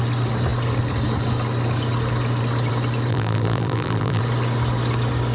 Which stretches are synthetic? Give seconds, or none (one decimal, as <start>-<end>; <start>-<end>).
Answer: 3.1-4.2